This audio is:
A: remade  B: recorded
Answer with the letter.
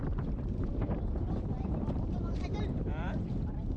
A